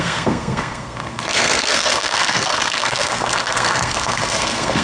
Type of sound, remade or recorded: remade